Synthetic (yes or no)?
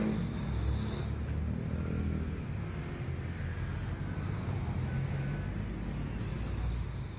no